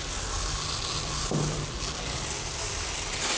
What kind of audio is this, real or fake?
real